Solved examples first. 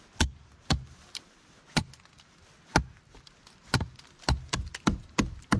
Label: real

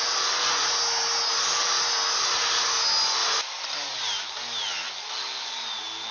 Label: real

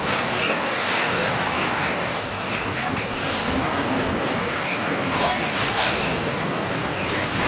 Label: fake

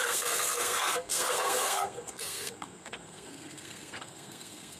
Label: fake